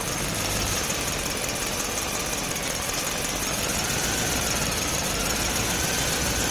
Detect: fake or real fake